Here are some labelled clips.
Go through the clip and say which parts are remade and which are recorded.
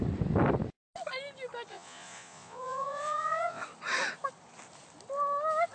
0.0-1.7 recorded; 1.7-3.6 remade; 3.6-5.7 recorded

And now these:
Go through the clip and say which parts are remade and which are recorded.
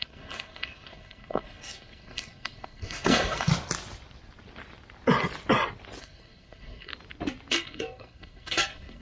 0.0-3.5 remade; 3.5-6.0 recorded; 6.0-6.9 remade; 6.9-7.5 recorded; 7.5-9.0 remade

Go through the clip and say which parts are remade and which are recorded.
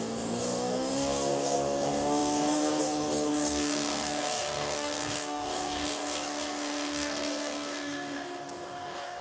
0.0-9.2 remade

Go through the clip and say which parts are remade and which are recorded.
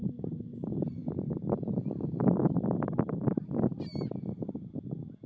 0.0-5.3 recorded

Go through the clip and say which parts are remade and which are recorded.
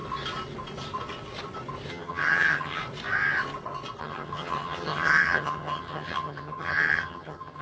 0.0-1.9 recorded; 1.9-2.8 remade; 2.8-4.0 recorded; 4.0-7.6 remade